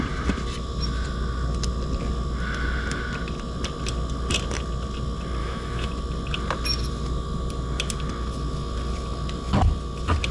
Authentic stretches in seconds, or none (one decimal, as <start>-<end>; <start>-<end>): 0.0-5.4; 5.9-10.3